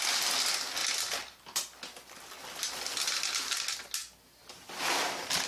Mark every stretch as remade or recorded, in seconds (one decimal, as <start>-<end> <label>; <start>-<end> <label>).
0.0-5.5 recorded